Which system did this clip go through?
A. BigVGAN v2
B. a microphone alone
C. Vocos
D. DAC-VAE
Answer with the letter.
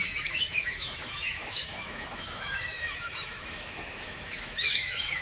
D